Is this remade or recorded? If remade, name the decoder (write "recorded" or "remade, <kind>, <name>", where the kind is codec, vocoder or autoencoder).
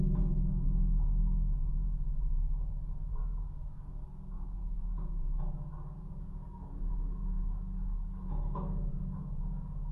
remade, vocoder, Vocos